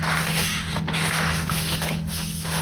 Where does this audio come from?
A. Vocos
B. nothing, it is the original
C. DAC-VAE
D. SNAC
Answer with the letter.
C